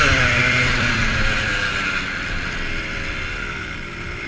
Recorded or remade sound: remade